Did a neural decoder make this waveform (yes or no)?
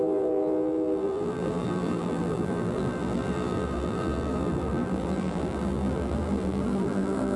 yes